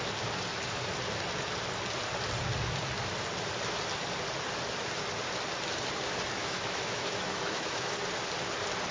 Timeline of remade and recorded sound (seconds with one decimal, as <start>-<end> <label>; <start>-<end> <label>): 0.0-6.4 recorded; 6.4-7.9 remade; 7.9-8.9 recorded